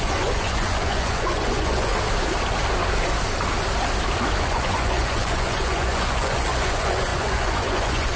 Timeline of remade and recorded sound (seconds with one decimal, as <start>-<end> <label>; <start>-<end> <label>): 0.0-1.9 remade; 1.9-4.4 recorded; 4.4-8.2 remade